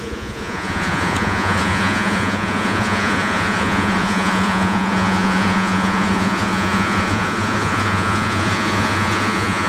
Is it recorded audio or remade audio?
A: remade